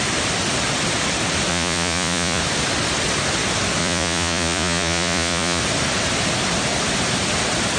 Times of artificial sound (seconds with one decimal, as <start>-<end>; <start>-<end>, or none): 1.5-2.4; 3.8-5.6